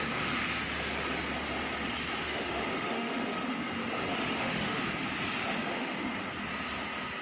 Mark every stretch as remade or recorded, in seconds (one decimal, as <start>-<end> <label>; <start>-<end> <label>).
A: 0.0-2.2 recorded; 2.2-3.5 remade; 3.5-4.1 recorded; 4.1-4.8 remade; 4.8-5.7 recorded; 5.7-6.3 remade; 6.3-7.2 recorded